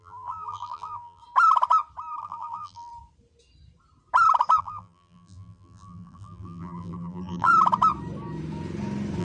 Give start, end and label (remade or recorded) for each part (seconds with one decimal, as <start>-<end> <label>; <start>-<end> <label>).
0.0-1.2 remade; 1.2-2.2 recorded; 2.2-2.9 remade; 2.9-4.6 recorded; 4.6-7.5 remade; 7.5-9.2 recorded